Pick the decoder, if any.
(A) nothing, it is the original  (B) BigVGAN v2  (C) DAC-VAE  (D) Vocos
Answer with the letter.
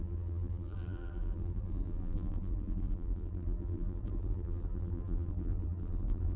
B